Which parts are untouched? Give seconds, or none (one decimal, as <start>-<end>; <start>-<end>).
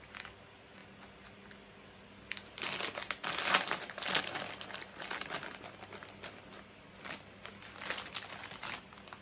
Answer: 0.0-9.2